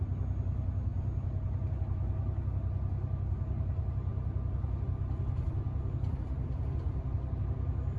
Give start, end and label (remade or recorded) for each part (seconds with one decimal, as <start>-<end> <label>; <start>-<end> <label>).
0.0-8.0 recorded